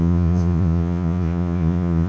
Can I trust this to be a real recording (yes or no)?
no